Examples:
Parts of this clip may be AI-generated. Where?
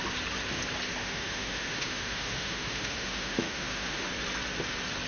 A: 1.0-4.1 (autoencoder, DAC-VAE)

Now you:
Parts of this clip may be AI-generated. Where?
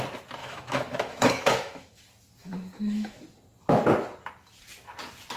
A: 0.4-2.0 (autoencoder, DAC-VAE); 2.4-3.2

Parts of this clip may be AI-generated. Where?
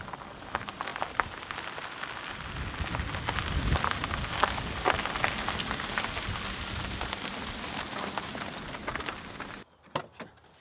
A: none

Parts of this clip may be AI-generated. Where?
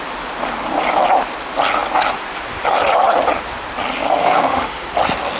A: 4.2-4.9 (autoencoder, DAC-VAE)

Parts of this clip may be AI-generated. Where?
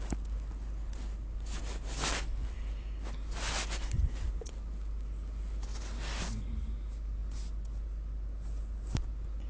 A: none